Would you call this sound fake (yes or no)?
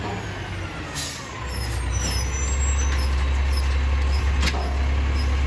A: no